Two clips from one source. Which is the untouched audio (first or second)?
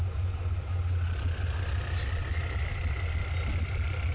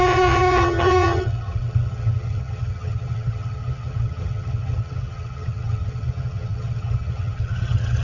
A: first